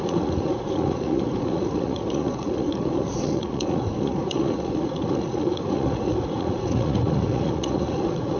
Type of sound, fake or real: fake